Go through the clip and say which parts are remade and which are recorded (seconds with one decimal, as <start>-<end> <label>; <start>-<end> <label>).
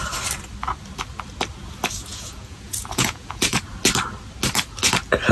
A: 0.0-2.1 recorded; 2.1-3.6 remade; 3.6-5.3 recorded